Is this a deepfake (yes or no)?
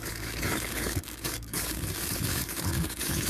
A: yes